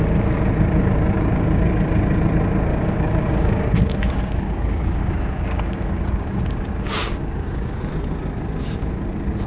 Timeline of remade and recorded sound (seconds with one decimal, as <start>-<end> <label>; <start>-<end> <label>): 0.0-0.8 recorded; 0.8-1.7 remade; 1.7-2.7 recorded; 2.7-7.9 remade; 7.9-9.5 recorded